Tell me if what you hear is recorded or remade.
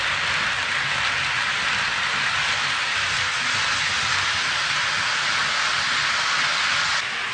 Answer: recorded